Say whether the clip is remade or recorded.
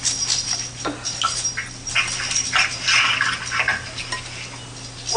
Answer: recorded